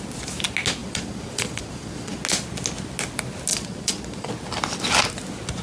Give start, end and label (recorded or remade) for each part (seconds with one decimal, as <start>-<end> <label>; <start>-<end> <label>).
0.0-0.8 recorded; 0.8-2.2 remade; 2.2-3.5 recorded; 3.5-4.3 remade; 4.3-5.6 recorded